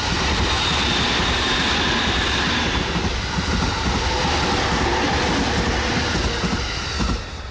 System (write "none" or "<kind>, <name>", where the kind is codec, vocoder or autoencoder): none